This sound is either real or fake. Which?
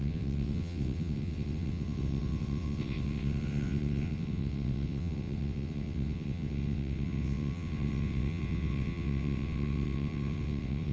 fake